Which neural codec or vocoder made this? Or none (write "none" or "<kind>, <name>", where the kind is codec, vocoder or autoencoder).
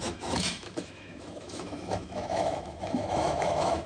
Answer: autoencoder, DAC-VAE